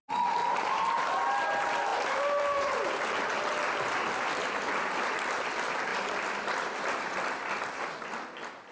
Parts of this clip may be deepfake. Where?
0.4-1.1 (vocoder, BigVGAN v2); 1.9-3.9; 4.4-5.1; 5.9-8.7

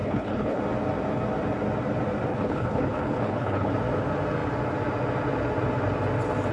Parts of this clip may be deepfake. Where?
0.0-0.6 (codec, HILCodec); 2.3-3.7

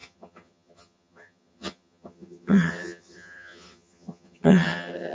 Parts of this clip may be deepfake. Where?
0.0-5.1 (vocoder, HiFi-GAN)